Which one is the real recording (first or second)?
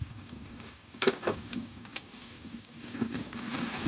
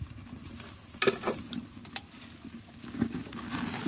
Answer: second